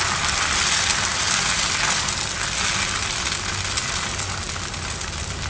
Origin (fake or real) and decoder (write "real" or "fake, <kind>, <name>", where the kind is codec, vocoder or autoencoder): real